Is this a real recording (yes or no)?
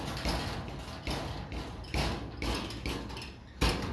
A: yes